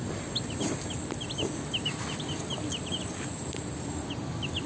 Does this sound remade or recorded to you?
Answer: recorded